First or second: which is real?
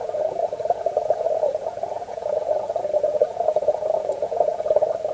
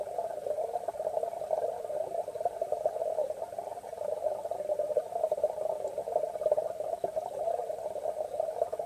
second